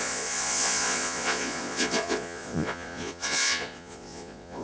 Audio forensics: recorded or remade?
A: remade